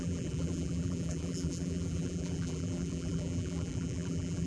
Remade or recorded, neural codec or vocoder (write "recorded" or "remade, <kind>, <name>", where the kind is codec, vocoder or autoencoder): remade, vocoder, BigVGAN v2